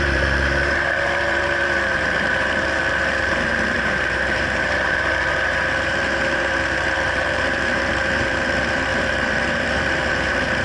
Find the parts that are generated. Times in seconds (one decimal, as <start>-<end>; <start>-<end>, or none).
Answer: 0.0-10.6